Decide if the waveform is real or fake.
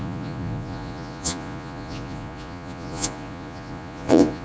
fake